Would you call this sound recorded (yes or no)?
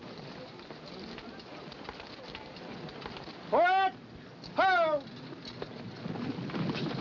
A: yes